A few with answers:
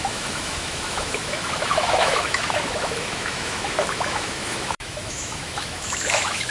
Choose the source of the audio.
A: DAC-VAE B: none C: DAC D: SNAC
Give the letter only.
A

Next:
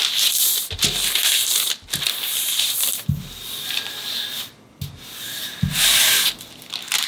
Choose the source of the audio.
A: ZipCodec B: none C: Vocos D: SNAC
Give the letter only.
B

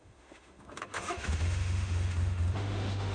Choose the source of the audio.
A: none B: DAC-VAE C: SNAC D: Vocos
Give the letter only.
B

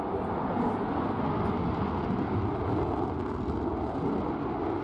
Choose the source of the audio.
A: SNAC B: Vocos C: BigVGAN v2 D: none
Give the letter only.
D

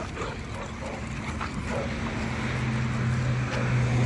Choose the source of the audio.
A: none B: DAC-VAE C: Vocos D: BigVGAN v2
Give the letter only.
A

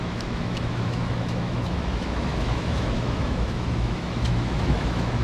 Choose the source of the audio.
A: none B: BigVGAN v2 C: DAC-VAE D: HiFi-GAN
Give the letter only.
C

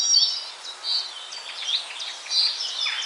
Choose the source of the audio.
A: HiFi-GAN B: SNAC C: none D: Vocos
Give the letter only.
C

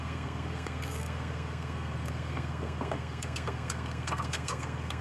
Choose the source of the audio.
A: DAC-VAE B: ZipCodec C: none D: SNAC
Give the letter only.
D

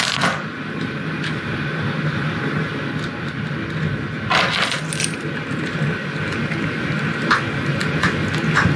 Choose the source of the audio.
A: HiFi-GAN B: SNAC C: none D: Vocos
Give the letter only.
C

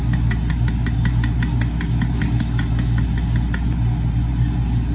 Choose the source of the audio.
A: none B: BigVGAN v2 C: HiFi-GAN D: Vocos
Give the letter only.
A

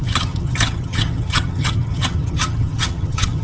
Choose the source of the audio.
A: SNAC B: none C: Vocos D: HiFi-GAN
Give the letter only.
D